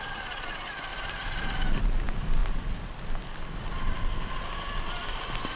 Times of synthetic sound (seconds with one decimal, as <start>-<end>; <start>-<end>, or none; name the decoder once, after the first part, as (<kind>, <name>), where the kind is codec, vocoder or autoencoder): none